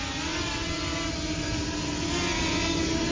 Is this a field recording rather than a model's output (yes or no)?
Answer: yes